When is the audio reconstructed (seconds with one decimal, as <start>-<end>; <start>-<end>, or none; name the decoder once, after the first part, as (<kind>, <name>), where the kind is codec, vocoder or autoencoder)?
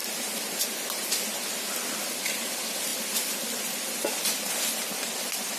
0.0-2.9 (vocoder, BigVGAN v2); 4.1-5.6